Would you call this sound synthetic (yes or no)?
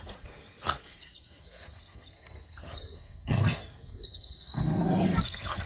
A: yes